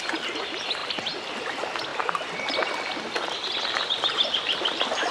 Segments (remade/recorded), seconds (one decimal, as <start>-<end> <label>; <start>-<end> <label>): 0.0-0.8 recorded; 0.8-1.4 remade; 1.4-1.9 recorded; 1.9-5.1 remade